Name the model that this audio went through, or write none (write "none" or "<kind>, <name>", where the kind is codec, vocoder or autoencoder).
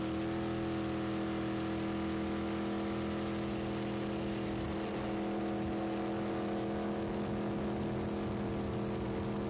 none